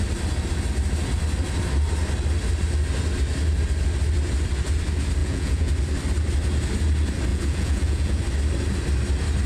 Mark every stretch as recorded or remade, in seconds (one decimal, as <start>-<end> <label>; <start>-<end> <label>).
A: 0.0-5.2 recorded; 5.2-5.7 remade; 5.7-7.3 recorded; 7.3-8.2 remade; 8.2-9.5 recorded